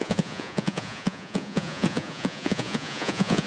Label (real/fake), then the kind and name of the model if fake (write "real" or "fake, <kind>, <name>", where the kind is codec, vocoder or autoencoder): fake, vocoder, Vocos